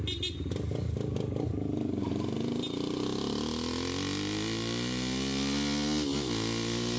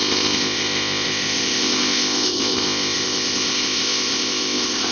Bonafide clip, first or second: first